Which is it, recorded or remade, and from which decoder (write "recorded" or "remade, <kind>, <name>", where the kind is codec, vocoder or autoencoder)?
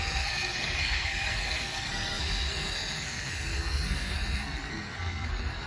remade, codec, SNAC